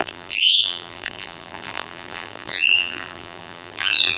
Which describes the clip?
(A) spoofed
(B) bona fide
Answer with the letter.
A